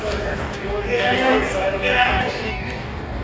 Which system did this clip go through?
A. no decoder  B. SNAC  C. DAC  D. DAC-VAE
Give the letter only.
C